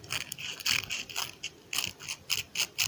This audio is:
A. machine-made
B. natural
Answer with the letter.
B